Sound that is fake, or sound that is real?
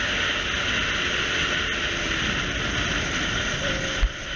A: real